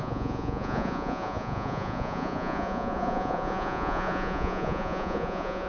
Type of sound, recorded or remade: remade